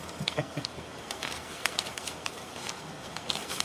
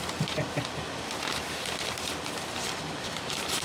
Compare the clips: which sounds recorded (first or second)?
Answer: second